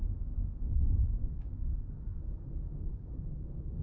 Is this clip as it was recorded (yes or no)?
no